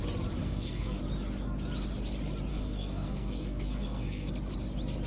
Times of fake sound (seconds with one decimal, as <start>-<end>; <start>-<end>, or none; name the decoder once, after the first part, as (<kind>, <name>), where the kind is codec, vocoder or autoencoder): 0.4-1.0 (codec, SNAC); 2.5-4.3